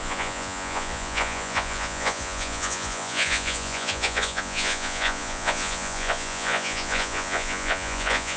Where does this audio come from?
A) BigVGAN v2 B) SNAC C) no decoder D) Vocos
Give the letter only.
D